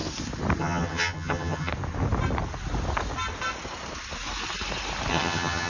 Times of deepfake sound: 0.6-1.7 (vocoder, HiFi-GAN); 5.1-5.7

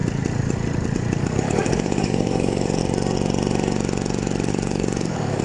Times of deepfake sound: 1.2-2.8 (codec, DAC); 4.5-5.4

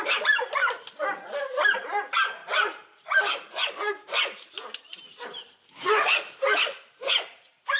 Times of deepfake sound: none

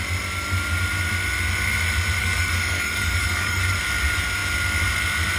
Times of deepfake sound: 2.2-3.6 (codec, DAC)

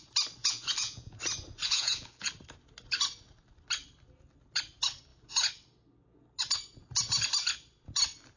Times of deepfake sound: 0.4-1.2 (vocoder, Vocos); 1.6-2.3

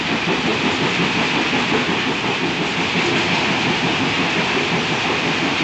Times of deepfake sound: none